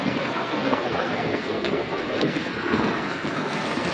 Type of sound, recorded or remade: remade